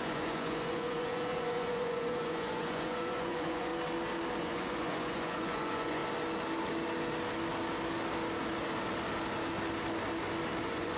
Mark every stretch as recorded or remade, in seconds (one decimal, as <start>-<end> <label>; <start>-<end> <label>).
0.0-3.7 remade; 3.7-4.4 recorded; 4.4-6.0 remade; 6.0-10.6 recorded; 10.6-11.0 remade